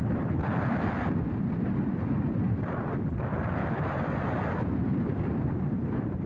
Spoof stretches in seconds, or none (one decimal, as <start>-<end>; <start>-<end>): none